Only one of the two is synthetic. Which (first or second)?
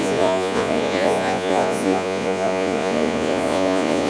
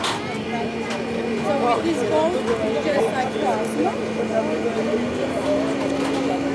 first